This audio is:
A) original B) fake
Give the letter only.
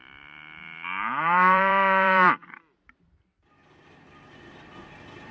B